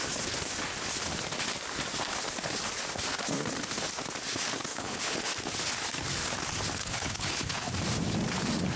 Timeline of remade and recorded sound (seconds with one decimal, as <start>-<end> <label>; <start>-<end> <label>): 0.0-4.7 recorded; 4.7-5.3 remade; 5.3-6.8 recorded; 6.8-7.7 remade; 7.7-8.8 recorded